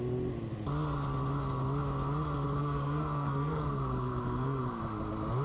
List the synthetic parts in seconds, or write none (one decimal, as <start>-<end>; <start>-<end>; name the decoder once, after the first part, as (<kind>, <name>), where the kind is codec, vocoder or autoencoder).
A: 2.6-4.6 (codec, SNAC)